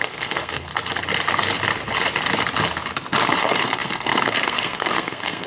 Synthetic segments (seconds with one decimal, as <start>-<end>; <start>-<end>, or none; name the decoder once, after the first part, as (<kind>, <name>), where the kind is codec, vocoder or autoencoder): 0.0-0.7 (codec, SNAC); 3.4-5.5